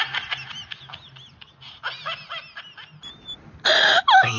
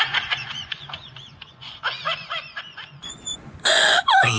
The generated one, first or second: second